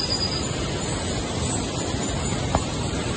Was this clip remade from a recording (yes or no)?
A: no